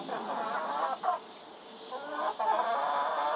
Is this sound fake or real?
real